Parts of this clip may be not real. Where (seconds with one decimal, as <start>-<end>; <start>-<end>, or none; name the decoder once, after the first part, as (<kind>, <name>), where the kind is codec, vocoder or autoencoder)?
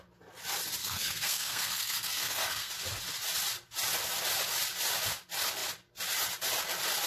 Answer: 0.8-2.7 (codec, SNAC)